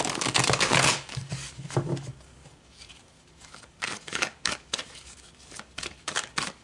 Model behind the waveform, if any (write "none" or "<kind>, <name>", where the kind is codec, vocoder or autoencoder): codec, DAC